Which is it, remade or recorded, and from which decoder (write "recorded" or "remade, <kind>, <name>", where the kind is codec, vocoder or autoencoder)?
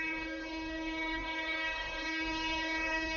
remade, codec, DAC